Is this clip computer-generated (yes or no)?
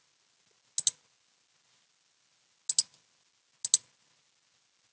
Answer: no